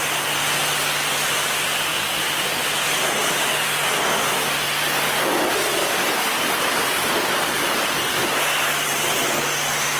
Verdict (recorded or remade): recorded